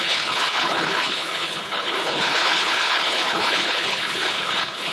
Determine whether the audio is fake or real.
fake